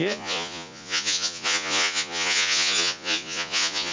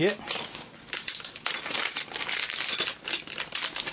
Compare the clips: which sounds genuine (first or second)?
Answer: second